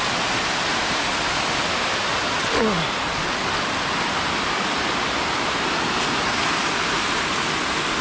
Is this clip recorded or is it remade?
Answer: recorded